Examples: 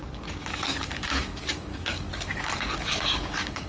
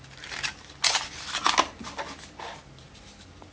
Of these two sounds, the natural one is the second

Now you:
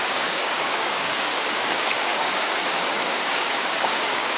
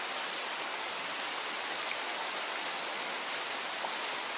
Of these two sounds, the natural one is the second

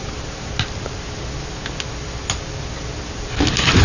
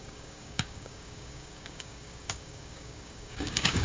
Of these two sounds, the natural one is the first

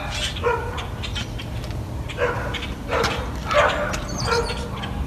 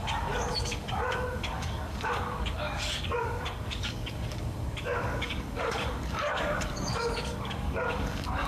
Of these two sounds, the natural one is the first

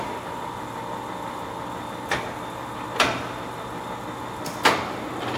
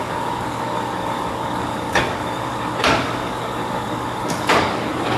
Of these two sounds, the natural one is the first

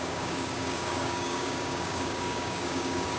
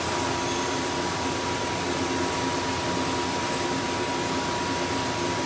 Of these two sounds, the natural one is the second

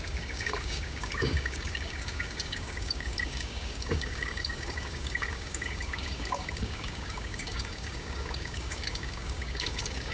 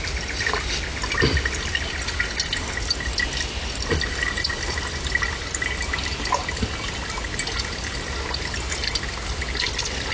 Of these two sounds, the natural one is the second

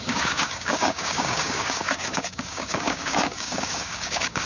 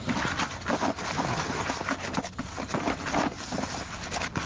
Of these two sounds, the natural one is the second